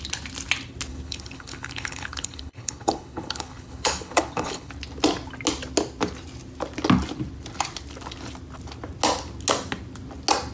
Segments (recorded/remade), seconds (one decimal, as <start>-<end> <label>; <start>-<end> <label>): 0.0-0.9 recorded; 0.9-4.7 remade; 4.7-10.5 recorded